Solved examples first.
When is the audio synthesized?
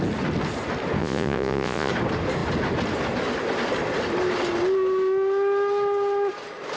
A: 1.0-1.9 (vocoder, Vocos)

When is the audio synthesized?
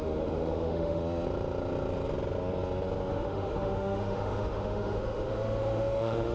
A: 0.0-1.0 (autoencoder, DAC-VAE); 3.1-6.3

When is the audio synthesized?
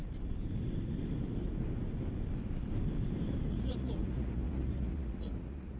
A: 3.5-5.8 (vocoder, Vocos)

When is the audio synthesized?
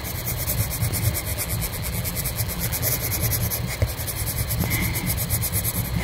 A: 1.3-2.9 (vocoder, BigVGAN v2)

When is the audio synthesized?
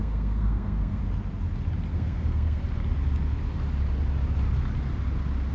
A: 0.0-1.0 (codec, SNAC); 1.9-2.6